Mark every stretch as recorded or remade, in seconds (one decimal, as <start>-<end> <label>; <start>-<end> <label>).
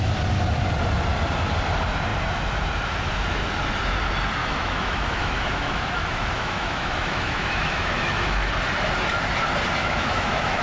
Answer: 0.0-4.4 recorded; 4.4-8.5 remade; 8.5-9.8 recorded; 9.8-10.6 remade